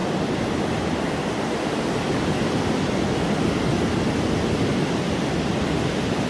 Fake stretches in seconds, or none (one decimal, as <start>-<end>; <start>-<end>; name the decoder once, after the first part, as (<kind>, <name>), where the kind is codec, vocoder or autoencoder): 0.0-3.2 (vocoder, BigVGAN v2)